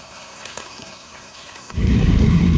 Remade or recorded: remade